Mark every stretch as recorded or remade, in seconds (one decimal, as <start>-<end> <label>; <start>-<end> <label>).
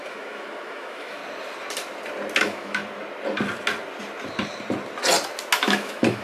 0.0-1.2 remade; 1.2-2.4 recorded; 2.4-2.8 remade; 2.8-5.6 recorded; 5.6-6.2 remade